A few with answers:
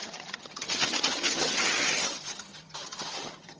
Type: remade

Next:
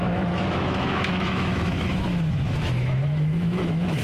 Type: remade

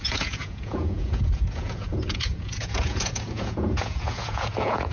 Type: remade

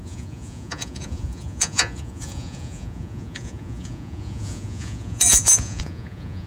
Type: remade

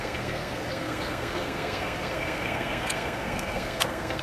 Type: remade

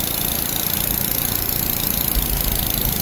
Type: remade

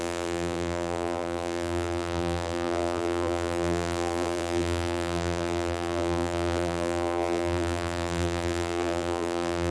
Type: remade